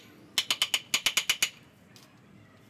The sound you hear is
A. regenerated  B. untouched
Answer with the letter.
B